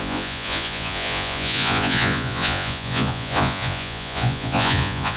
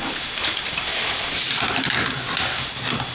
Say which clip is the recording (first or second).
second